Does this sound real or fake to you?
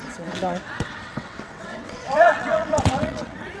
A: fake